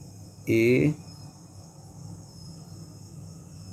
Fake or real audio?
real